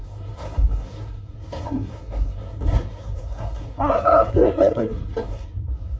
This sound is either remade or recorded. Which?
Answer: remade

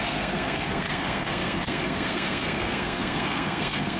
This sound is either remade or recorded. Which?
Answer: remade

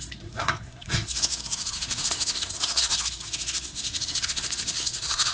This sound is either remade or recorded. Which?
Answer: remade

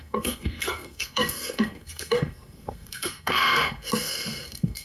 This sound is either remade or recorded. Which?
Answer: remade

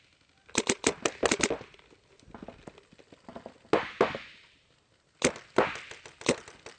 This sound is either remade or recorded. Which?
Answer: recorded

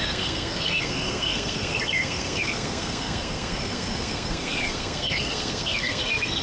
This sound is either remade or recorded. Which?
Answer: remade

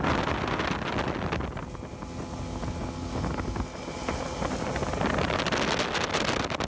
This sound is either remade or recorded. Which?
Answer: recorded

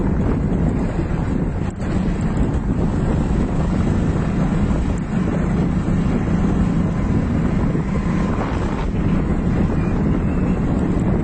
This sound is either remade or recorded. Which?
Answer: recorded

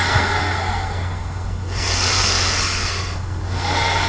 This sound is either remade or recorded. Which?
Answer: remade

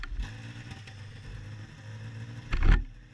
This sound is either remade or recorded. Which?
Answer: recorded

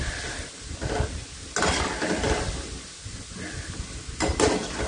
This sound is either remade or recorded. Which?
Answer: recorded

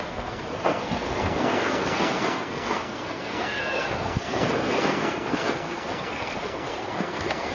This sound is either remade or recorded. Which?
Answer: remade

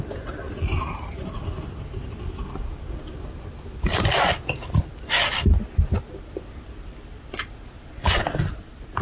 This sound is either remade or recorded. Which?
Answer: recorded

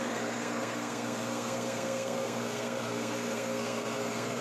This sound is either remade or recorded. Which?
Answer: remade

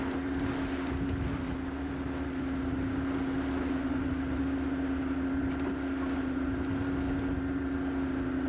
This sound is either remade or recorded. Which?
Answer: recorded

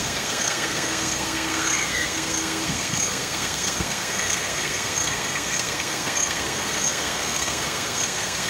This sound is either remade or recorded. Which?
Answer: remade